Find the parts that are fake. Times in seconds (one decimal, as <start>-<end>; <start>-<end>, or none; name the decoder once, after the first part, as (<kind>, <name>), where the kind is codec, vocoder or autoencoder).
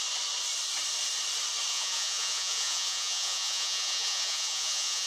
1.7-5.1 (vocoder, Vocos)